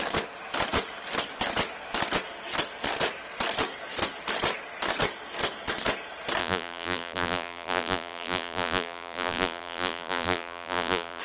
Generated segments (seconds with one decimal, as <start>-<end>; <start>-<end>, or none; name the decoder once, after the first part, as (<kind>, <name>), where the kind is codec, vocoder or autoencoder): 6.4-11.2 (vocoder, BigVGAN v2)